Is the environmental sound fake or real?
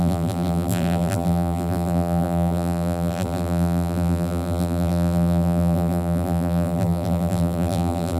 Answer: fake